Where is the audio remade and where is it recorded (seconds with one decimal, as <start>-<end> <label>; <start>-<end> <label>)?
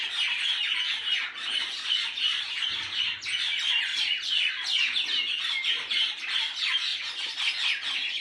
0.0-8.2 recorded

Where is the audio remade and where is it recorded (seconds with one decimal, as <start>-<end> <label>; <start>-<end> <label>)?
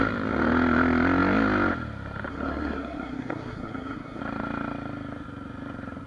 0.0-2.3 recorded; 2.3-4.2 remade; 4.2-6.1 recorded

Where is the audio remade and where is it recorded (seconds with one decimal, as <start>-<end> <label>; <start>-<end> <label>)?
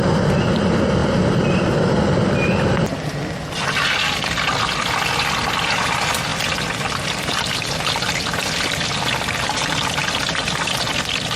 0.0-11.4 recorded